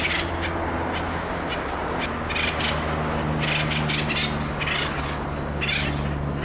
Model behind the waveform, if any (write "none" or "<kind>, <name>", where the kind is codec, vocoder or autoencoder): none